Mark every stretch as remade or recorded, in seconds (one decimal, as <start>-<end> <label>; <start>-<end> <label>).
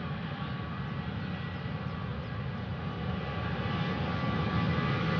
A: 0.0-5.2 recorded